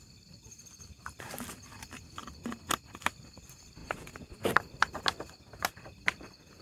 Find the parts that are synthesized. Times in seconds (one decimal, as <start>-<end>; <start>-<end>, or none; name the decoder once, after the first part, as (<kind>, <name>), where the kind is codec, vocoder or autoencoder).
none